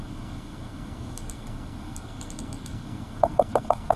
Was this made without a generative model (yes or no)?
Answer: no